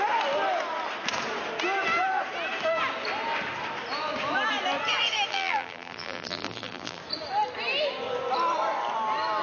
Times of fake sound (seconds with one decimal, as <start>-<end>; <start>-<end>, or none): 5.3-7.0